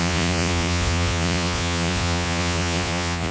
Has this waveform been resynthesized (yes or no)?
yes